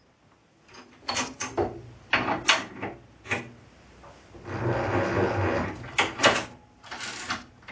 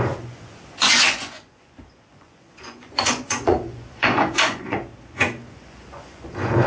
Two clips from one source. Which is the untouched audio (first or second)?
first